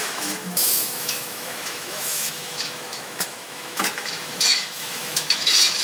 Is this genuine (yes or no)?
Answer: no